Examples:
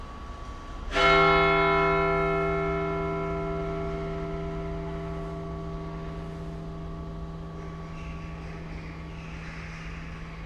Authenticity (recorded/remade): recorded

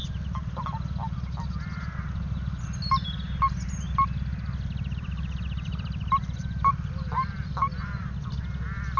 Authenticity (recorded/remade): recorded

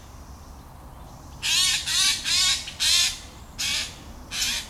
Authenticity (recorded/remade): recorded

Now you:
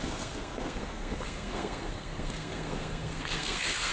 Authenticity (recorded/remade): remade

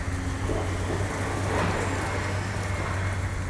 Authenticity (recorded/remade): recorded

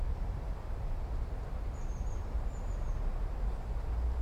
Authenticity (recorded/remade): recorded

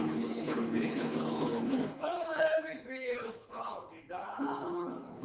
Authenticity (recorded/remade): remade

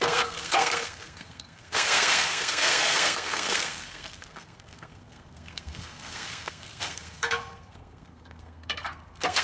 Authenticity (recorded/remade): remade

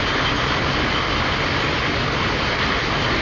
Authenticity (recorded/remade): recorded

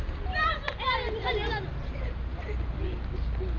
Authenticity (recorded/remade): recorded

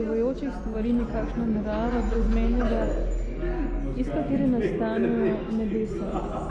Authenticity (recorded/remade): recorded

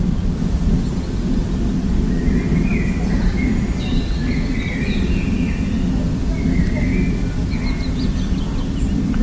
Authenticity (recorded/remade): recorded